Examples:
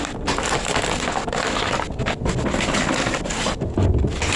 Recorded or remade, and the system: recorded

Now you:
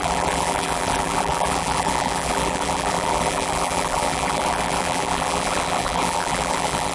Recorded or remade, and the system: remade, vocoder, BigVGAN v2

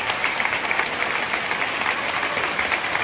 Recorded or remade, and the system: recorded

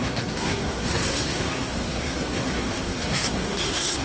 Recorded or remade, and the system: remade, codec, SNAC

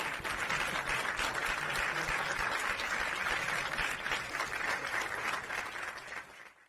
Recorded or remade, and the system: recorded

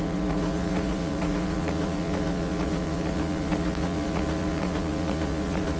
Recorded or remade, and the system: remade, vocoder, Vocos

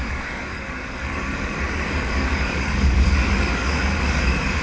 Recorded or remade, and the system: remade, codec, DAC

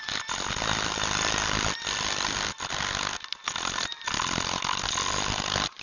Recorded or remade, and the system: recorded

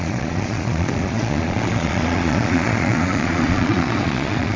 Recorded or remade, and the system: remade, vocoder, Vocos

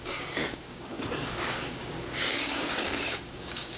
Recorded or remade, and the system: remade, codec, DAC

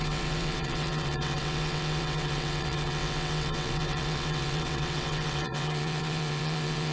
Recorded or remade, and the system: remade, vocoder, WaveNeXt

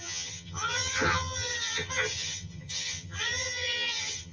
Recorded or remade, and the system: remade, vocoder, HiFi-GAN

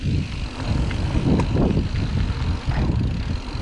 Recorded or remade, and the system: recorded